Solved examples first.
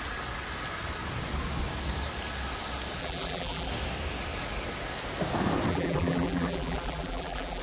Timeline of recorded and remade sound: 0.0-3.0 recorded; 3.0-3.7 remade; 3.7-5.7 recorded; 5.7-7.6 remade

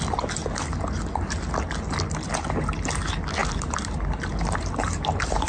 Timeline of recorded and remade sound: 0.0-3.4 recorded; 3.4-5.5 remade

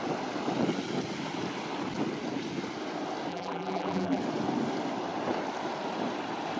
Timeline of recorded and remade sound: 0.0-3.3 recorded; 3.3-4.2 remade; 4.2-6.6 recorded

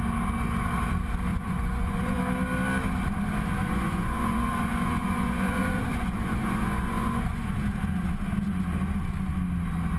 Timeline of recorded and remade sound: 0.0-1.3 recorded; 1.3-2.2 remade; 2.2-3.6 recorded; 3.6-7.5 remade; 7.5-10.0 recorded

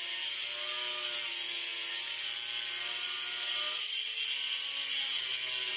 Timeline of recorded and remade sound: 0.0-5.8 recorded